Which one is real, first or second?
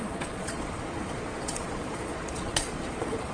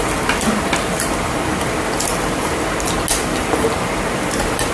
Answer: second